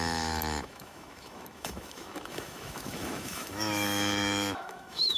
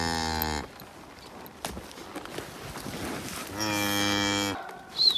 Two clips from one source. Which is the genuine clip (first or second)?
second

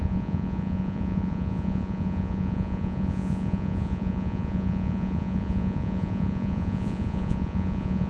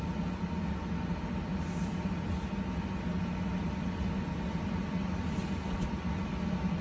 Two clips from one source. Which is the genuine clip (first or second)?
second